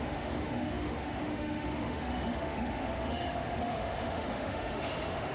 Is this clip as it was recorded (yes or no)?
no